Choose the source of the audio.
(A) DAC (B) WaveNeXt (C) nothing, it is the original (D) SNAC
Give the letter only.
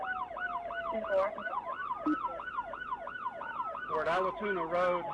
C